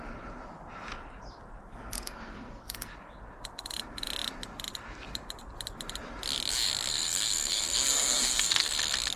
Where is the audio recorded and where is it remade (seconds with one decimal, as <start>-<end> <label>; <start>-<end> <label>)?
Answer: 0.0-1.7 recorded; 1.7-2.9 remade; 2.9-6.9 recorded; 6.9-8.7 remade; 8.7-9.2 recorded